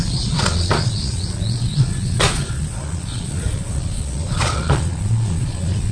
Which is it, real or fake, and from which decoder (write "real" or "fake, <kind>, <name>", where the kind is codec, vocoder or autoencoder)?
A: fake, vocoder, Vocos